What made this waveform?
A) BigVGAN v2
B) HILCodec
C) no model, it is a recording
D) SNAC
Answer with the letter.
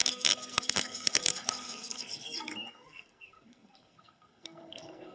D